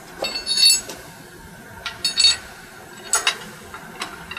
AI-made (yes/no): no